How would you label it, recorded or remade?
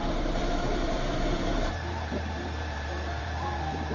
remade